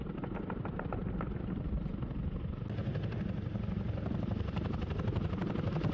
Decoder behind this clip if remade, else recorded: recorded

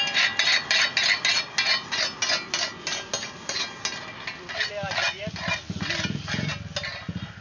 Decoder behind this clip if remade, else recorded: recorded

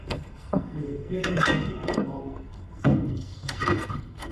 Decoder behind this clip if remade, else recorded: remade, codec, SNAC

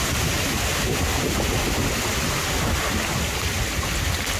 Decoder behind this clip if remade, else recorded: recorded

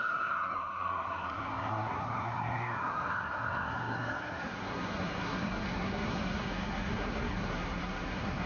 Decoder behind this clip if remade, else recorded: remade, codec, SNAC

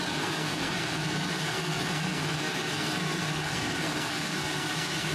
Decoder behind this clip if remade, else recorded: remade, codec, SNAC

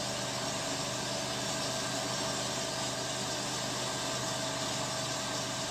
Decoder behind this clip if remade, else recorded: recorded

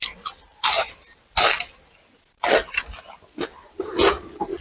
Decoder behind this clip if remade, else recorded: recorded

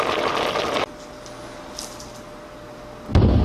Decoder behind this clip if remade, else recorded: recorded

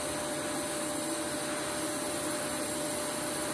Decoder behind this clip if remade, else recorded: recorded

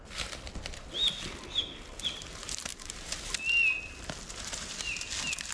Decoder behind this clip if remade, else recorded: recorded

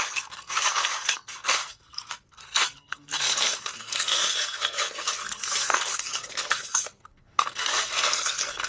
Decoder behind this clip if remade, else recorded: remade, codec, SNAC